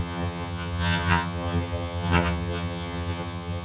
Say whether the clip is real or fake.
fake